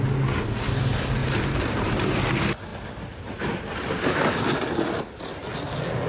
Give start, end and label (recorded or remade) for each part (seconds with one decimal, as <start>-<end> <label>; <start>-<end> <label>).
0.0-1.2 recorded; 1.2-2.1 remade; 2.1-6.1 recorded